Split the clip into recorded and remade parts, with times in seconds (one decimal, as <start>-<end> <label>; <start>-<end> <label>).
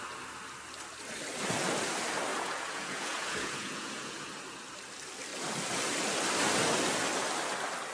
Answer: 0.0-2.3 recorded; 2.3-4.3 remade; 4.3-7.9 recorded